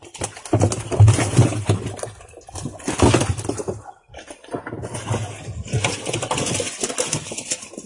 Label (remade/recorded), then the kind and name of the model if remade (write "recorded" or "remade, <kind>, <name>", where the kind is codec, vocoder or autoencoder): recorded